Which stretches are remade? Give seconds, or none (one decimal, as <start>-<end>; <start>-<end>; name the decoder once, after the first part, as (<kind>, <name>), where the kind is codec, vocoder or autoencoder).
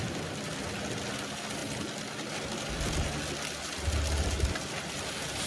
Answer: none